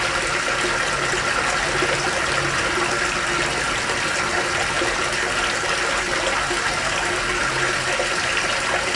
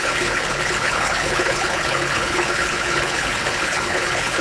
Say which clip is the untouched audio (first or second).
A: first